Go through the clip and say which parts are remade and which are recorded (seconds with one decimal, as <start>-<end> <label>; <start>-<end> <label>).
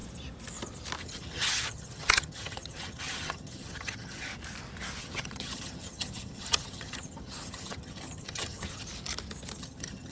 0.0-1.0 recorded; 1.0-4.3 remade; 4.3-5.0 recorded; 5.0-8.9 remade; 8.9-9.6 recorded; 9.6-10.1 remade